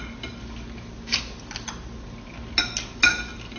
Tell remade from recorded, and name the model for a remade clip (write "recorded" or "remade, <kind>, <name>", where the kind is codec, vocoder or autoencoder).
recorded